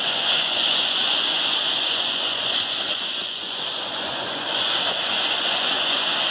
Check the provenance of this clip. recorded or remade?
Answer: remade